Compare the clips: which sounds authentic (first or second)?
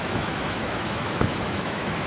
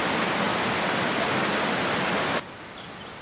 second